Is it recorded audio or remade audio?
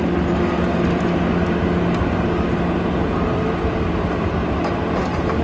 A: recorded